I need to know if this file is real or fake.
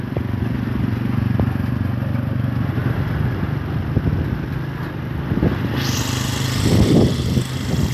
real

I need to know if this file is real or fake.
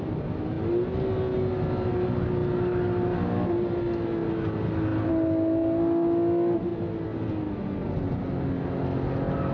real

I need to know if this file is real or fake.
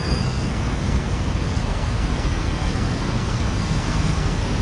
fake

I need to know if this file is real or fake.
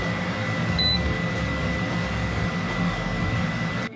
fake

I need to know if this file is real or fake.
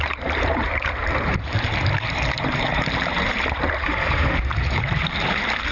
fake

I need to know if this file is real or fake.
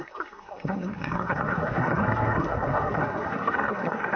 fake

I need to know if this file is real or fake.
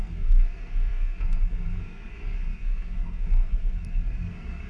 fake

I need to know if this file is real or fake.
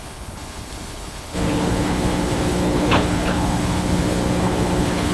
fake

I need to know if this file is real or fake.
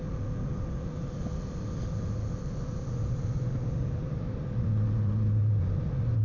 real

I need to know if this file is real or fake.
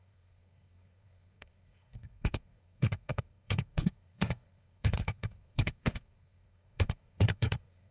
fake